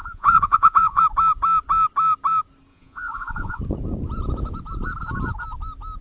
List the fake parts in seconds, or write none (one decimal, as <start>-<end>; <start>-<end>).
0.0-1.0; 2.7-3.6